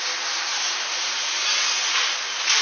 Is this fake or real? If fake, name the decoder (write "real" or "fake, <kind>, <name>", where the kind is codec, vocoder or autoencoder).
real